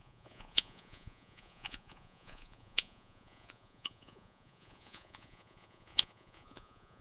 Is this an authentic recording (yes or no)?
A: no